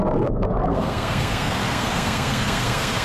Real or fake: fake